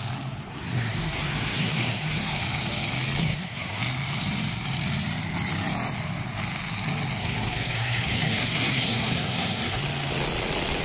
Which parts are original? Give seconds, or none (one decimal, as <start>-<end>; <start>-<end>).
0.0-0.5; 2.4-3.2; 3.8-7.2; 9.8-10.8